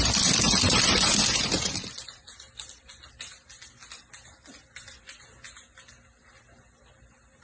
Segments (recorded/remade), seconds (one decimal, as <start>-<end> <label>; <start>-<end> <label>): 0.0-7.4 recorded